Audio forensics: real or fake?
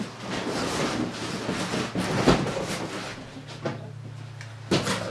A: real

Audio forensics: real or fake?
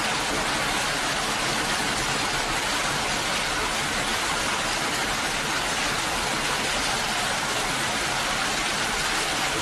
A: real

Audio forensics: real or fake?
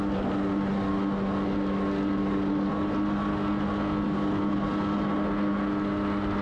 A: real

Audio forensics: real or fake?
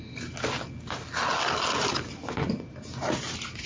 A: real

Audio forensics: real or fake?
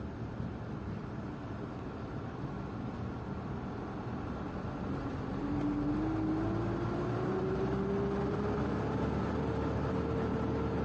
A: real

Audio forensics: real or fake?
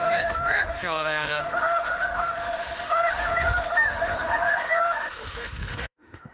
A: fake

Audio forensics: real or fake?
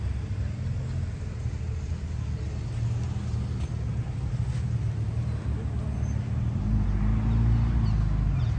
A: real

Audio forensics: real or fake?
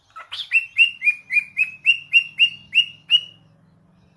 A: real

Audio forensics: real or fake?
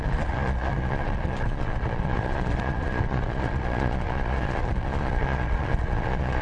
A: fake